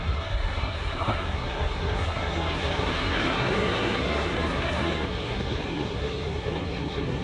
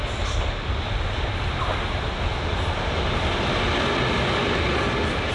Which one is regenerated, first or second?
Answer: first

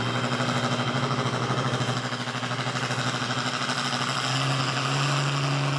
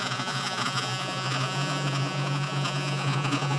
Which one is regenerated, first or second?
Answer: second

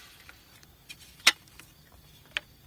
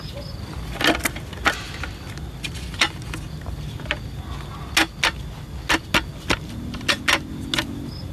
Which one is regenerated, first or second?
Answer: first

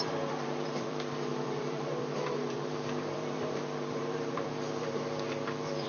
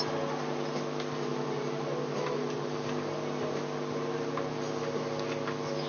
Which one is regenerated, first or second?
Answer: first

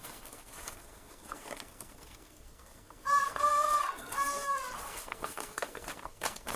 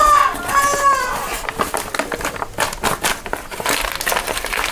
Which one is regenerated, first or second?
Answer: first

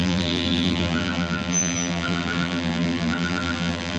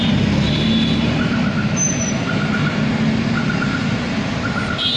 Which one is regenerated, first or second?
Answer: first